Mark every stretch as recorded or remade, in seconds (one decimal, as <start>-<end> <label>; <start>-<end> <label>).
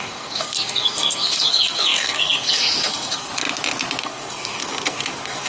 0.0-3.3 remade; 3.3-4.0 recorded; 4.0-5.5 remade